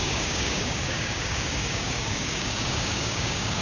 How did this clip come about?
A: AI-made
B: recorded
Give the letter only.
A